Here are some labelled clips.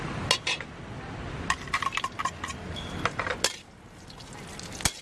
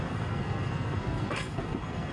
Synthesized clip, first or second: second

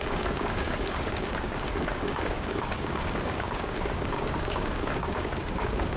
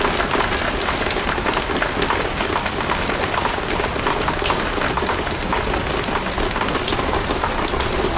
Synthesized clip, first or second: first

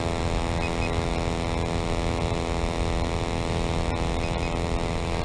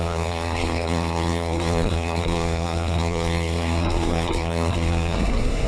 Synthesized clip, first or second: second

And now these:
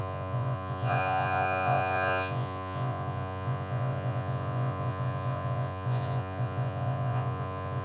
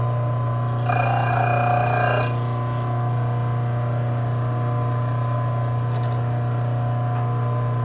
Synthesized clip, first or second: first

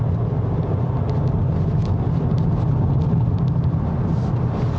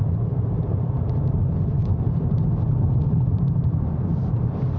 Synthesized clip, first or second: second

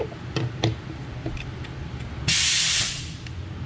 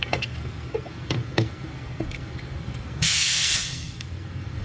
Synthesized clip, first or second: second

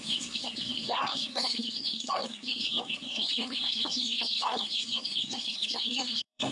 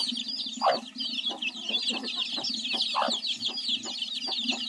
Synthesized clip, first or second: first